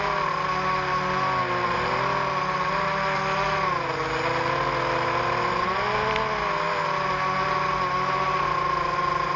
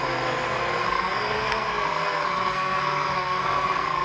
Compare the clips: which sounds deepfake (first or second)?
second